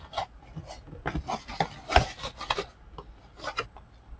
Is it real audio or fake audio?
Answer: real